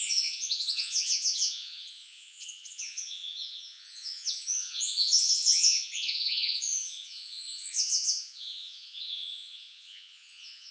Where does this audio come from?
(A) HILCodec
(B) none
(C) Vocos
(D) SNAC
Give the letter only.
C